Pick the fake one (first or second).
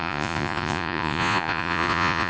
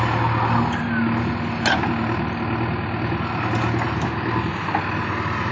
first